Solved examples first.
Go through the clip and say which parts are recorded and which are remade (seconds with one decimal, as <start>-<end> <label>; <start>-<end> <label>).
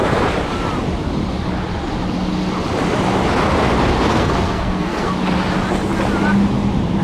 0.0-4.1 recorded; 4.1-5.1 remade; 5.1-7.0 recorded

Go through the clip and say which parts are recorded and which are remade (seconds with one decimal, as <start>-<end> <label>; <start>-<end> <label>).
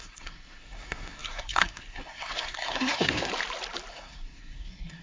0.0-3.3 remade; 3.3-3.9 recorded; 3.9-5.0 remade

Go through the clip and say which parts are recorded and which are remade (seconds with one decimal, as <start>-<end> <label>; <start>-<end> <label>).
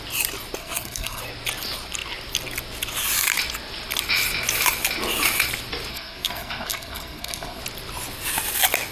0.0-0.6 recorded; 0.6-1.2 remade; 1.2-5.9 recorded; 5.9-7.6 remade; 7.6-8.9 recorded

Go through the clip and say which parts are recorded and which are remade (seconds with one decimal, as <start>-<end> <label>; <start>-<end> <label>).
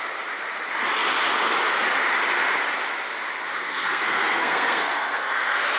0.0-3.5 recorded; 3.5-5.8 remade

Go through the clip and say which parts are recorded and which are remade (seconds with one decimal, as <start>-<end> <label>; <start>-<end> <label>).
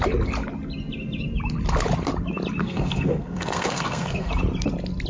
0.0-2.6 recorded; 2.6-4.3 remade; 4.3-5.1 recorded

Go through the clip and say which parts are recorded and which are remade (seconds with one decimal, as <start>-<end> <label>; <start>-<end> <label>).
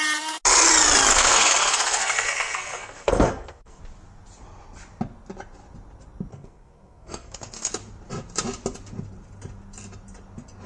0.0-1.1 recorded; 1.1-3.8 remade; 3.8-6.3 recorded; 6.3-7.7 remade; 7.7-10.7 recorded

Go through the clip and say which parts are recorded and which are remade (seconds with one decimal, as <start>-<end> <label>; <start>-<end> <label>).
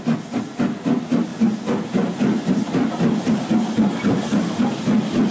0.0-5.3 recorded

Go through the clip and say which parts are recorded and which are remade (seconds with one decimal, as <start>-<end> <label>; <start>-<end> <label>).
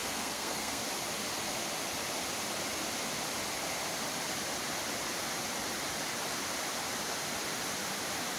0.0-0.8 remade; 0.8-8.4 recorded